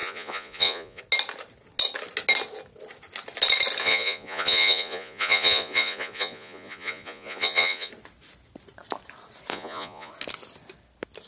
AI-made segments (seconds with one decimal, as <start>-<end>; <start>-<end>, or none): 0.0-1.0; 3.8-7.9; 9.5-10.1